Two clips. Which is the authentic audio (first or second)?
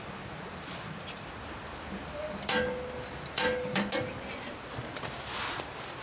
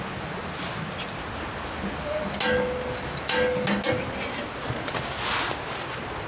second